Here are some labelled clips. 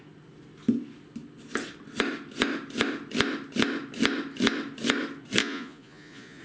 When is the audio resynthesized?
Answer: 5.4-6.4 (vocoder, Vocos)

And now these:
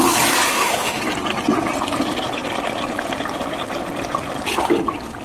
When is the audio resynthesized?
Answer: 0.5-1.0 (autoencoder, DAC-VAE)

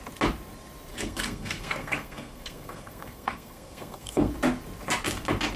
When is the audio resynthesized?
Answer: 0.9-4.3 (codec, SNAC)

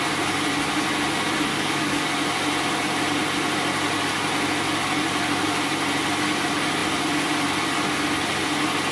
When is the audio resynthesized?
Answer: 1.5-2.0 (codec, DAC)